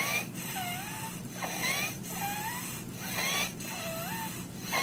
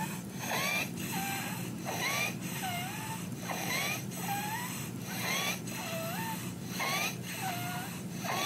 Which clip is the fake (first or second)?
second